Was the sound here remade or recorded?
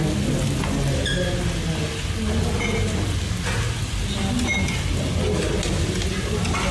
recorded